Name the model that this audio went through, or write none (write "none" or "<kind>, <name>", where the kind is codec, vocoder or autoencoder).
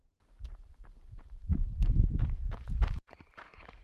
vocoder, BigVGAN v2